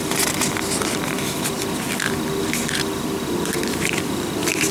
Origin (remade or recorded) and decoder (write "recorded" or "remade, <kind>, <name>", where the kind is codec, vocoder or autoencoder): recorded